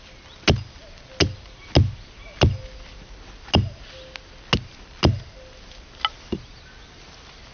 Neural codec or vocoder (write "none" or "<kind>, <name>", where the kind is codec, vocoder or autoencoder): none